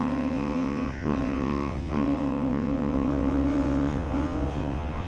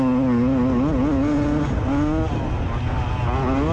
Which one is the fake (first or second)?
first